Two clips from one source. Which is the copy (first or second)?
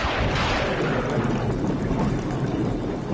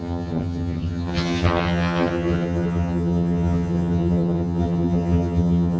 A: second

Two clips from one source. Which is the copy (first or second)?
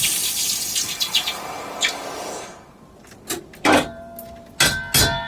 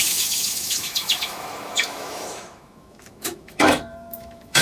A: second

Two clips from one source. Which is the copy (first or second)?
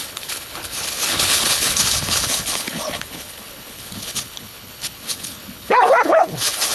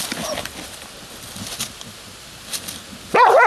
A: first